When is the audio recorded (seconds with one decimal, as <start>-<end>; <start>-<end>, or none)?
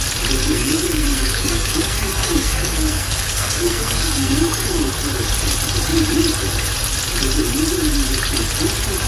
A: 0.0-0.4; 4.9-9.1